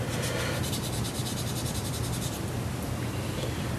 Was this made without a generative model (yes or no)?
yes